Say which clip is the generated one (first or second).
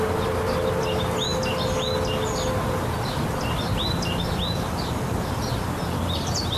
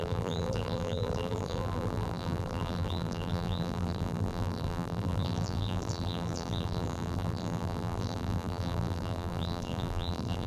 second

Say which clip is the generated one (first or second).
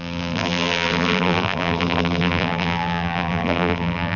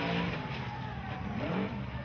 first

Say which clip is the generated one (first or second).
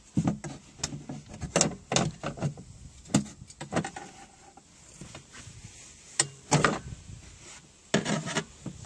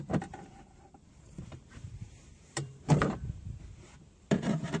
second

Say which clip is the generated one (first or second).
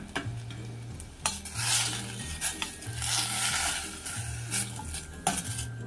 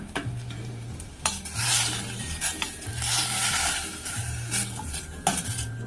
second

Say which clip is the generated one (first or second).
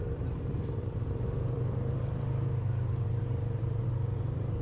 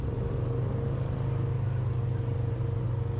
first